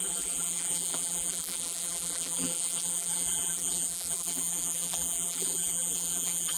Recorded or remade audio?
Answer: remade